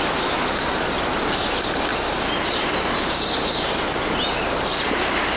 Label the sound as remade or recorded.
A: recorded